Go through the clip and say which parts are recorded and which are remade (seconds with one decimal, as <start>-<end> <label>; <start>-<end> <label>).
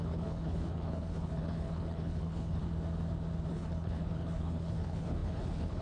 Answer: 0.0-2.6 remade; 2.6-3.5 recorded; 3.5-5.8 remade